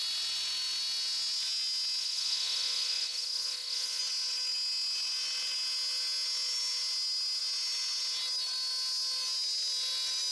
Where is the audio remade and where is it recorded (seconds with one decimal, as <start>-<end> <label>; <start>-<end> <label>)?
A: 0.0-2.0 recorded; 2.0-4.0 remade; 4.0-10.3 recorded